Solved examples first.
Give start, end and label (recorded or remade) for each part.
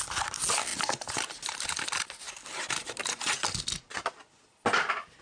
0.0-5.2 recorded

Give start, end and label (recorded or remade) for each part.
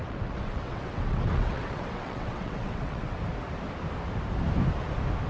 0.0-3.2 remade; 3.2-5.3 recorded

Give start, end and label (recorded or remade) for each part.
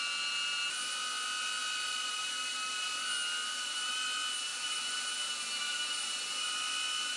0.0-4.5 recorded; 4.5-5.3 remade; 5.3-7.2 recorded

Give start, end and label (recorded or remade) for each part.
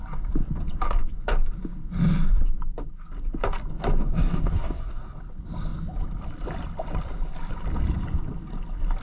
0.0-4.0 recorded; 4.0-5.2 remade; 5.2-9.0 recorded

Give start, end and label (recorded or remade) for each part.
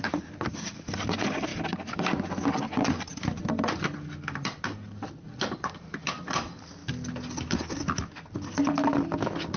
0.0-9.6 recorded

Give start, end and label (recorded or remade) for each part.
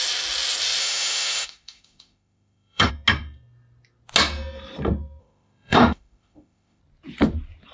0.0-0.8 recorded; 0.8-2.9 remade; 2.9-5.2 recorded; 5.2-6.8 remade; 6.8-7.7 recorded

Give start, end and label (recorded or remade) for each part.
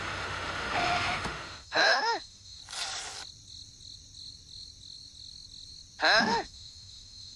0.0-2.6 remade; 2.6-6.2 recorded; 6.2-7.4 remade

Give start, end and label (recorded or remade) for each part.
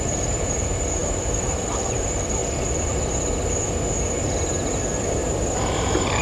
0.0-2.4 remade; 2.4-4.8 recorded; 4.8-5.2 remade; 5.2-5.7 recorded; 5.7-6.2 remade